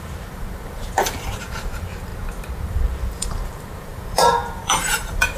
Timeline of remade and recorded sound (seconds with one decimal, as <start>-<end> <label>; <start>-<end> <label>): 0.0-2.1 remade; 2.1-2.6 recorded; 2.6-5.4 remade